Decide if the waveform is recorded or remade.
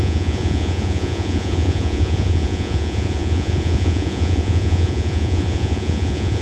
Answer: remade